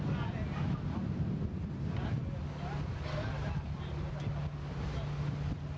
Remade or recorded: recorded